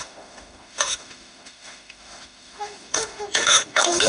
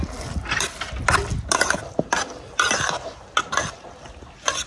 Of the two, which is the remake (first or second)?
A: first